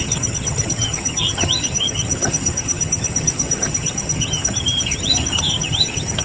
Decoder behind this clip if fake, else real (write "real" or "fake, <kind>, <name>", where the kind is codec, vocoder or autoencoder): fake, vocoder, HiFi-GAN